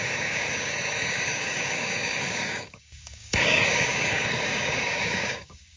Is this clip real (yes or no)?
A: no